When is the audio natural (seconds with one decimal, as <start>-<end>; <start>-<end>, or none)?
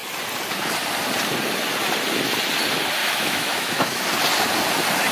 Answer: 0.0-3.0; 4.0-5.1